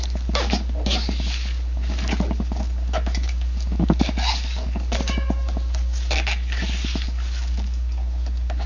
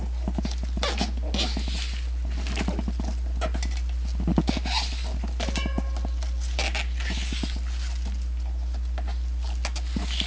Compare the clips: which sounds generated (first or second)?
first